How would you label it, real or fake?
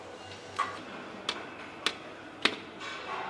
real